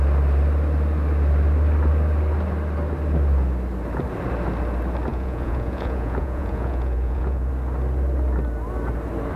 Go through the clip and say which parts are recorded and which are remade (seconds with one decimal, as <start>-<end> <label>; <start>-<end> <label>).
0.0-5.1 recorded; 5.1-7.5 remade; 7.5-9.4 recorded